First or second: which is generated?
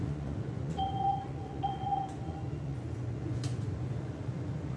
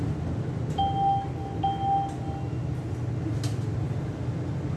first